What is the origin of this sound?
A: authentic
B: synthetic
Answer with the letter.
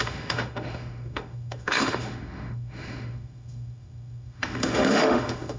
B